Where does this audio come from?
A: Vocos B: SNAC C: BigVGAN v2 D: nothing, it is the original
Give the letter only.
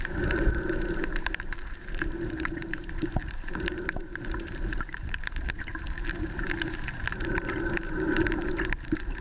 C